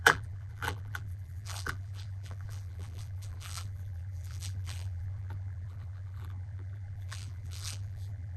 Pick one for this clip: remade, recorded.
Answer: remade